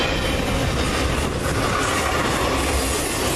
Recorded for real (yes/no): yes